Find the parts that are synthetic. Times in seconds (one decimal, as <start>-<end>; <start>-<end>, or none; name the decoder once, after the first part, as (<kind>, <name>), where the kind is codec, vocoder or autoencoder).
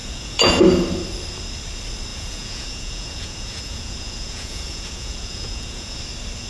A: 0.0-0.5 (vocoder, Vocos); 2.1-6.0